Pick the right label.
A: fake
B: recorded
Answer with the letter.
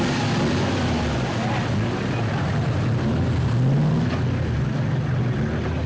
B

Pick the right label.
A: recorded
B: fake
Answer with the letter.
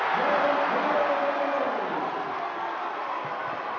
A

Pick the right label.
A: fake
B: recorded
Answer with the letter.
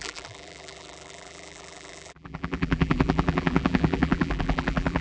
A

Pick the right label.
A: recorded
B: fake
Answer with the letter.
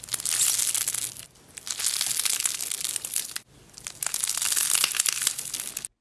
A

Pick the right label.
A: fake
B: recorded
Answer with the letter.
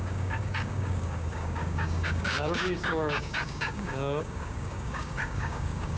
A